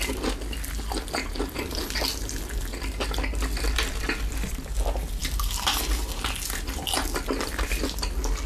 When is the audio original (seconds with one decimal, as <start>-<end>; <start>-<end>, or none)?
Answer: 0.0-8.5